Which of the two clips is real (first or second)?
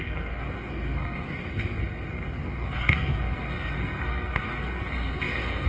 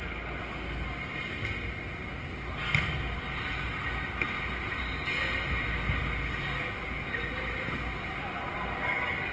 second